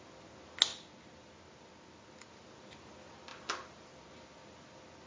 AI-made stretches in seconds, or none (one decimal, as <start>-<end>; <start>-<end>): 3.3-4.0